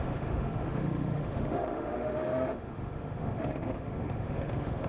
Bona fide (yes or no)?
no